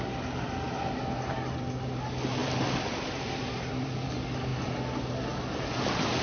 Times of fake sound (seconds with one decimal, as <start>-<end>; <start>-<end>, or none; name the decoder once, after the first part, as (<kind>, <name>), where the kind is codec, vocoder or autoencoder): 2.4-4.1 (vocoder, BigVGAN v2)